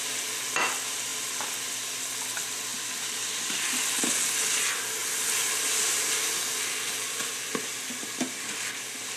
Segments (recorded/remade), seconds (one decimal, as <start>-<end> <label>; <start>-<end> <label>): 0.0-1.1 recorded; 1.1-2.2 remade; 2.2-2.7 recorded; 2.7-3.5 remade; 3.5-5.0 recorded; 5.0-6.2 remade; 6.2-9.2 recorded